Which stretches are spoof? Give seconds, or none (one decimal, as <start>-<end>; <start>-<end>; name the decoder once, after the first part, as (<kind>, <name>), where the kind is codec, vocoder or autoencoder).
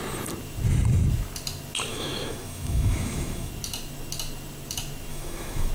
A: 1.9-3.5 (autoencoder, DAC-VAE); 5.1-5.7